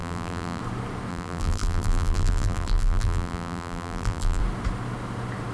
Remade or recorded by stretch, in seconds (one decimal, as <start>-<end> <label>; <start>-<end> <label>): 0.0-0.6 remade; 0.6-1.1 recorded; 1.1-4.4 remade; 4.4-5.5 recorded